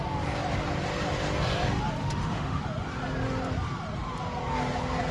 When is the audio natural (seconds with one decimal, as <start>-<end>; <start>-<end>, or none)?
0.0-2.0; 2.6-5.1